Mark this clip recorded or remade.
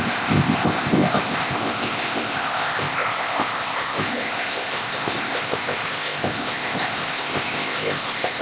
remade